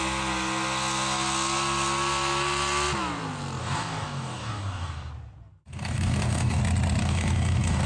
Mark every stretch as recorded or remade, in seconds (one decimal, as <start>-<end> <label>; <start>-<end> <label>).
0.0-3.6 recorded; 3.6-5.1 remade; 5.1-5.7 recorded; 5.7-6.6 remade; 6.6-7.0 recorded; 7.0-7.9 remade

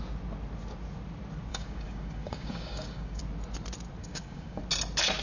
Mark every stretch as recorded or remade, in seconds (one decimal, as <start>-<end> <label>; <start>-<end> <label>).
0.0-1.5 recorded; 1.5-3.2 remade; 3.2-4.0 recorded; 4.0-4.6 remade; 4.6-5.2 recorded

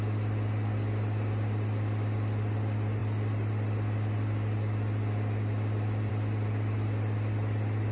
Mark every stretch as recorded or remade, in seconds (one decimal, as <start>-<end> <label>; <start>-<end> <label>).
0.0-7.9 recorded

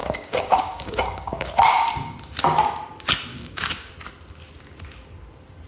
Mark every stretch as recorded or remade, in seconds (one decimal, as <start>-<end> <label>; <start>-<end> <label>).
0.0-1.5 remade; 1.5-3.3 recorded; 3.3-3.9 remade; 3.9-5.7 recorded

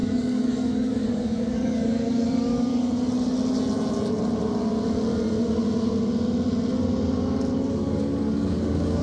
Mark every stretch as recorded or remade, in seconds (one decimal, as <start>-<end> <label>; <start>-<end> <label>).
0.0-2.7 remade; 2.7-7.7 recorded; 7.7-9.0 remade